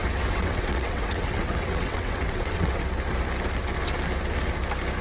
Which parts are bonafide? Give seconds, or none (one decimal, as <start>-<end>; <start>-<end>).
2.8-5.0